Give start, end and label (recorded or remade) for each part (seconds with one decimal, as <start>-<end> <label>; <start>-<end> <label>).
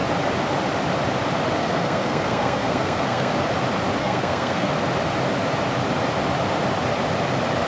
0.0-1.6 recorded; 1.6-3.3 remade; 3.3-4.0 recorded; 4.0-4.7 remade; 4.7-7.7 recorded